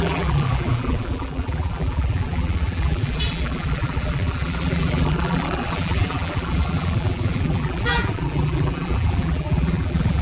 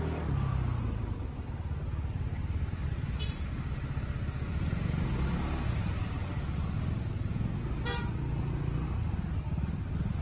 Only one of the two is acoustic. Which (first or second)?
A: second